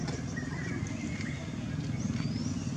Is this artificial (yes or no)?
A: no